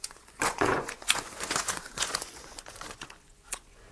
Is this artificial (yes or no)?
yes